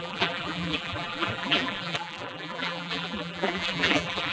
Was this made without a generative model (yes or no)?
no